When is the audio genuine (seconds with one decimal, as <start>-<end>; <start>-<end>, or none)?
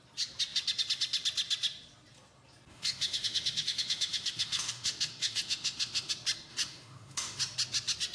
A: 0.0-2.7; 6.1-6.5; 7.4-8.1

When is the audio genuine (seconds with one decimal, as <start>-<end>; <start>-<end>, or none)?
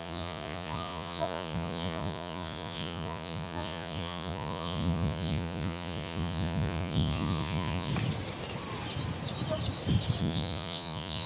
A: 7.9-10.2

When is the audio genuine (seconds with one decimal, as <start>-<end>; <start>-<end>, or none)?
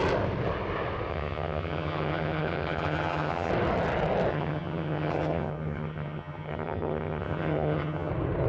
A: 0.0-1.1; 3.5-4.3; 8.1-8.5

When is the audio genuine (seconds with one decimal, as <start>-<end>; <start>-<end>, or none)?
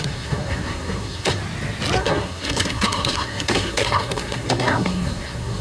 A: 1.4-2.0